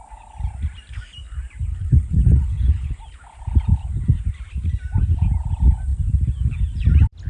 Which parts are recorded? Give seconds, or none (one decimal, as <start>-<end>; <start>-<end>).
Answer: 0.0-1.7; 3.0-7.3